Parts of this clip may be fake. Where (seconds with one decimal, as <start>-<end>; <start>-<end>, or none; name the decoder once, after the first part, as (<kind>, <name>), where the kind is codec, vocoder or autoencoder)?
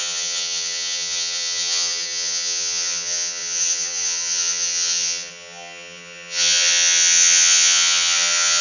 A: 0.0-8.6 (vocoder, HiFi-GAN)